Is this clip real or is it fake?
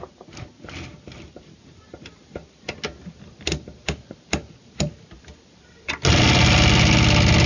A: real